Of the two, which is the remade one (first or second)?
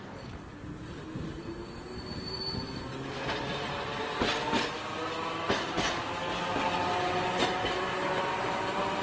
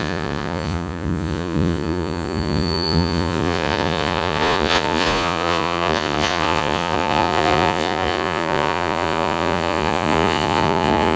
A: second